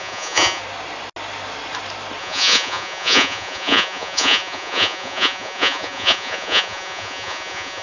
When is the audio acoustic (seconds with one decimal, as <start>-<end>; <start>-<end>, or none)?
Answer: 0.6-2.2